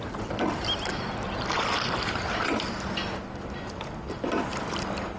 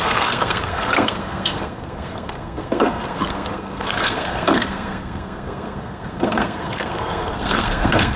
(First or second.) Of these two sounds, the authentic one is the first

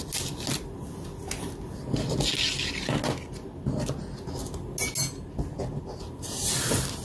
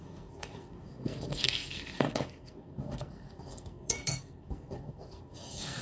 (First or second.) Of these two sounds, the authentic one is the first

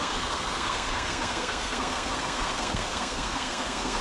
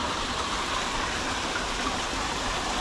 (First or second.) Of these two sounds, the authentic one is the second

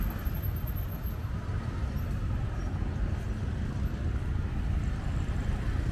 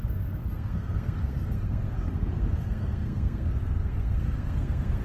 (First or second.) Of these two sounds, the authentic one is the first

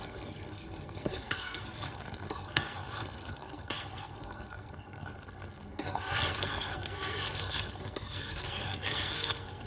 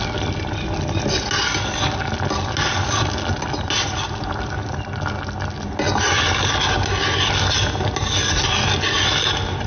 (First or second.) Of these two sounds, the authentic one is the second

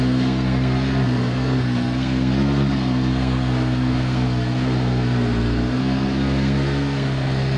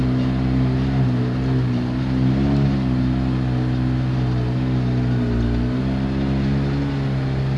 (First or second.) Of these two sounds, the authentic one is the second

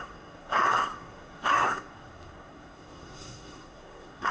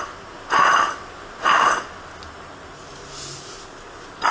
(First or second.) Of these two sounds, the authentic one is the second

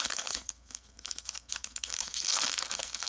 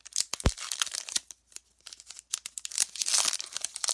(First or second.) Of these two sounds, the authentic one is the second